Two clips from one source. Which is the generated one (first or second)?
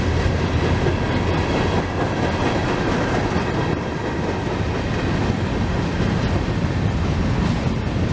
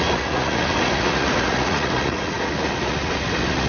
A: second